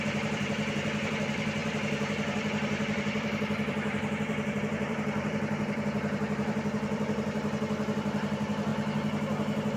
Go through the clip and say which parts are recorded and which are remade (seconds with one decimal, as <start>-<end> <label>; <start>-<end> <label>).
0.0-8.7 remade; 8.7-9.8 recorded

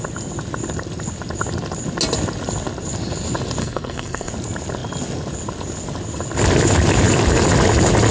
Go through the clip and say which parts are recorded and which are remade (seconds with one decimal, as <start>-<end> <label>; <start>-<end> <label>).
0.0-3.6 recorded; 3.6-4.3 remade; 4.3-8.1 recorded

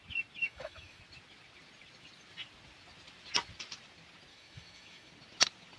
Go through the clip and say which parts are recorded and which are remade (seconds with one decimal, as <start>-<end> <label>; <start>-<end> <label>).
0.0-0.4 recorded; 0.4-1.0 remade; 1.0-4.3 recorded; 4.3-5.1 remade; 5.1-5.8 recorded

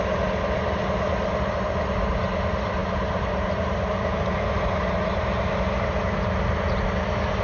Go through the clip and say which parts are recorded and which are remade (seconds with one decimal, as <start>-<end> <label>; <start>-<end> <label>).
0.0-2.8 recorded; 2.8-5.5 remade; 5.5-7.4 recorded

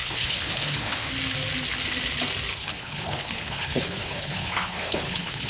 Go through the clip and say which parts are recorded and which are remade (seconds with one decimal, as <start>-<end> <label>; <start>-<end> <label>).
0.0-1.1 remade; 1.1-2.5 recorded; 2.5-5.5 remade

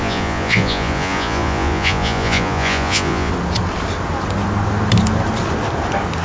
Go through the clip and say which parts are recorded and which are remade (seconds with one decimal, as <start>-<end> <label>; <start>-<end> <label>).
0.0-3.3 remade; 3.3-6.2 recorded

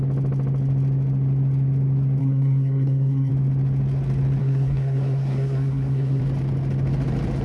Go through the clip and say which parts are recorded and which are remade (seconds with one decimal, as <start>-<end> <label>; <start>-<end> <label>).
0.0-2.2 recorded; 2.2-3.3 remade; 3.3-4.4 recorded; 4.4-6.2 remade; 6.2-7.4 recorded

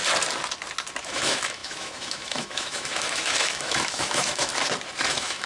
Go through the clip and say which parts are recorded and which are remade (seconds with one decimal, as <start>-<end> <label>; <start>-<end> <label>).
0.0-1.0 recorded; 1.0-4.5 remade; 4.5-5.1 recorded; 5.1-5.5 remade